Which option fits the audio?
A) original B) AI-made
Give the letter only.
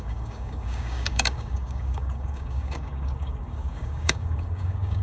B